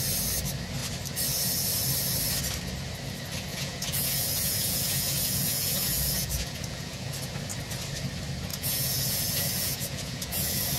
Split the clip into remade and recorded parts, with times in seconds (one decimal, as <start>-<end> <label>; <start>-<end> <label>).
0.0-3.5 recorded; 3.5-7.1 remade; 7.1-8.5 recorded; 8.5-10.8 remade